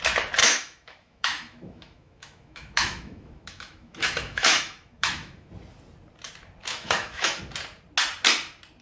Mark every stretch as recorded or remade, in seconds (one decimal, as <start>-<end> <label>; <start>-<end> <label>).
0.0-0.4 recorded; 0.4-5.5 remade; 5.5-6.6 recorded; 6.6-7.4 remade; 7.4-8.8 recorded